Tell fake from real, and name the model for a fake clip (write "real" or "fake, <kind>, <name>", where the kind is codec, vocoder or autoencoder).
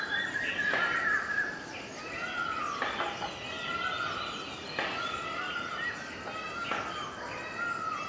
real